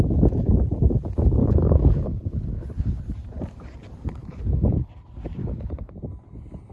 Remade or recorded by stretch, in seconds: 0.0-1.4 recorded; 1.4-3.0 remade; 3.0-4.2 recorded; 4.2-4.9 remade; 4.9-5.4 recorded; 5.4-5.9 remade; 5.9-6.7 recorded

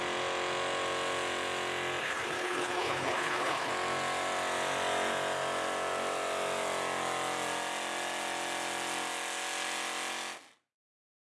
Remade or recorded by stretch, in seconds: 0.0-2.0 recorded; 2.0-3.7 remade; 3.7-11.3 recorded

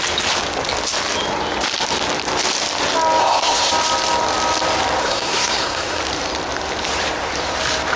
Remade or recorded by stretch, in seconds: 0.0-3.2 recorded; 3.2-3.7 remade; 3.7-5.0 recorded; 5.0-6.0 remade; 6.0-8.0 recorded

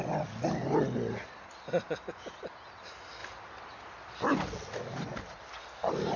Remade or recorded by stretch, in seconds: 0.0-6.2 recorded